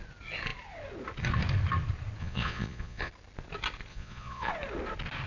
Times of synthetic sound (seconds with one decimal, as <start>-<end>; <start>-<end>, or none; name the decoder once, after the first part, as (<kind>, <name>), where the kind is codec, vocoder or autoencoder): 2.2-3.1 (vocoder, Vocos); 3.9-4.5